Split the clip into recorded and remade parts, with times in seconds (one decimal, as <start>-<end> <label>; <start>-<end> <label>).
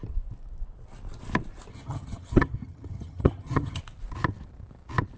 0.0-1.7 recorded; 1.7-3.8 remade; 3.8-5.2 recorded